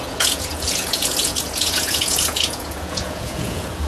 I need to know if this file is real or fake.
fake